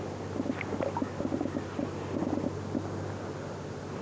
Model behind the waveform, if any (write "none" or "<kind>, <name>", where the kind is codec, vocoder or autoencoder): none